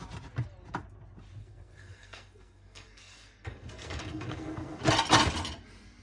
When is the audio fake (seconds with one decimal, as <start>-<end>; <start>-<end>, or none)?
1.4-4.8